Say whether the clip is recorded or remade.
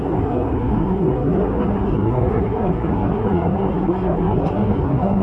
remade